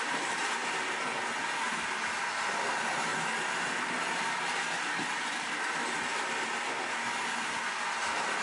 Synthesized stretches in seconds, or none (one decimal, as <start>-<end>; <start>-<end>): none